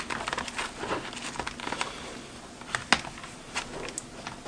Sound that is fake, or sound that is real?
real